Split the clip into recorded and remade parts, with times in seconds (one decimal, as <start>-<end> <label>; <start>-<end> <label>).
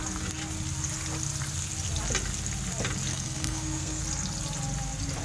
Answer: 0.0-3.1 recorded; 3.1-4.0 remade; 4.0-5.2 recorded